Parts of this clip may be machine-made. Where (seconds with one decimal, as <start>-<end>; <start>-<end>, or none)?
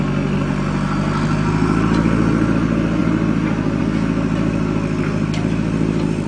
none